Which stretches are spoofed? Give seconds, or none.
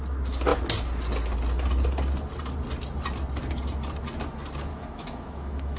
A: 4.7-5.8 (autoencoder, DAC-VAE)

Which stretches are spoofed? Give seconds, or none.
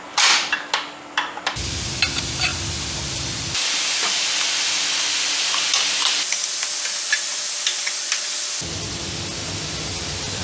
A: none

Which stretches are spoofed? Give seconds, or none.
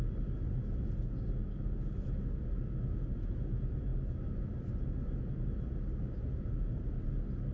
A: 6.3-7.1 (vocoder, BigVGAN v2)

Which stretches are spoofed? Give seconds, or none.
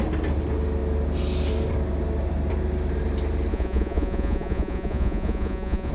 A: 3.5-5.9 (vocoder, Vocos)